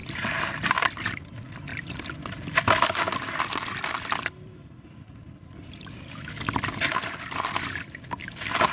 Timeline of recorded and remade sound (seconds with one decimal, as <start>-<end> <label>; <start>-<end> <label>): 0.0-8.7 recorded